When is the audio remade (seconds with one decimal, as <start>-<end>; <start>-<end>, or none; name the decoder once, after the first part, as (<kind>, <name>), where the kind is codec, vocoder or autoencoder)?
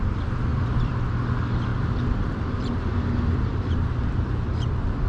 0.5-1.1 (vocoder, BigVGAN v2); 1.7-5.1